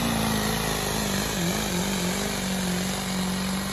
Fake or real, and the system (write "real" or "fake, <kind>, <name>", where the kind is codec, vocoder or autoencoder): real